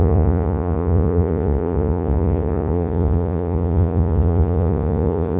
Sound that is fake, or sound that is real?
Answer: fake